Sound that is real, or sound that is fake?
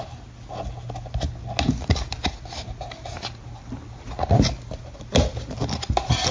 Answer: real